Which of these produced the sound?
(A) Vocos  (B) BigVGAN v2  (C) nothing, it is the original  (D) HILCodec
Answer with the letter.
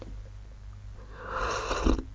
C